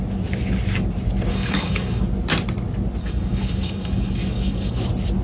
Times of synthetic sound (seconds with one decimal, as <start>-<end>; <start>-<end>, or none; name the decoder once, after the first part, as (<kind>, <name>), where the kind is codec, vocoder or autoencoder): 1.3-2.0 (codec, DAC); 3.0-4.8